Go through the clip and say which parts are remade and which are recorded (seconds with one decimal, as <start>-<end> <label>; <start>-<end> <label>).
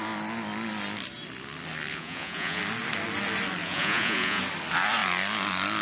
0.0-1.9 recorded; 1.9-2.6 remade; 2.6-3.6 recorded; 3.6-4.4 remade; 4.4-5.8 recorded